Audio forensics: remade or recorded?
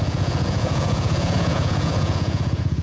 remade